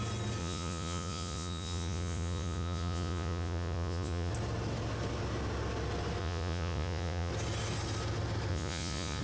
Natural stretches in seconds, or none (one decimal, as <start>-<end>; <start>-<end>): 0.0-0.4; 4.3-6.2; 7.3-8.5